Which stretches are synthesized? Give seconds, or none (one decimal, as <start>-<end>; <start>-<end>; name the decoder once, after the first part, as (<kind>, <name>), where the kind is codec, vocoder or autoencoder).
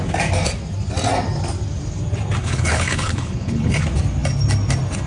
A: 2.4-3.8 (codec, HILCodec)